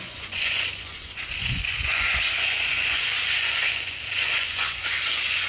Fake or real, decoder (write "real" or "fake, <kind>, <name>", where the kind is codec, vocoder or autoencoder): fake, vocoder, Vocos